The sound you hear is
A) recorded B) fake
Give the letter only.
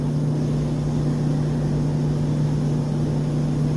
A